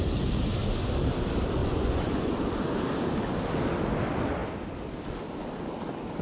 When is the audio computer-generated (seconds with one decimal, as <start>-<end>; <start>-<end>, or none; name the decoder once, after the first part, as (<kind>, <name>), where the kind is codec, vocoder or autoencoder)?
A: 1.6-2.3 (vocoder, Vocos)